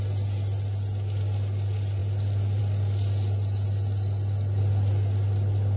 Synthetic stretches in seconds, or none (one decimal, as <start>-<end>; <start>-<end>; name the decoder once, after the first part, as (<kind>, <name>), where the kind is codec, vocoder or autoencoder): none